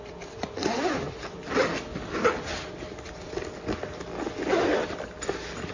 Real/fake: real